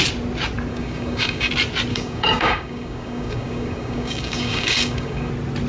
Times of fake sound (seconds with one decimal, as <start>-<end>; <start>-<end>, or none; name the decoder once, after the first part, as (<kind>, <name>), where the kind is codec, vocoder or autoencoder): 0.7-1.5 (codec, DAC); 1.9-5.3